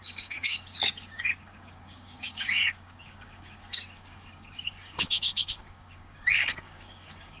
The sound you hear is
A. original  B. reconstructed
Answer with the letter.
B